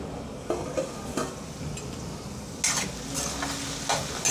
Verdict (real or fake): real